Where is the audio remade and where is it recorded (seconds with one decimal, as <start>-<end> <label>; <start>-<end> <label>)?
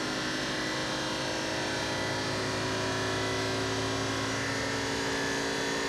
0.0-5.9 recorded